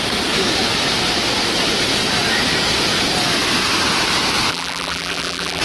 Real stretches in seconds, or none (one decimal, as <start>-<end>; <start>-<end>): 0.0-4.5